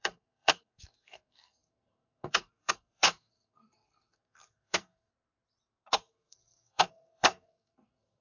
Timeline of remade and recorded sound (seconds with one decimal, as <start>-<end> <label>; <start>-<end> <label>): 0.0-5.1 remade; 5.1-6.0 recorded; 6.0-8.2 remade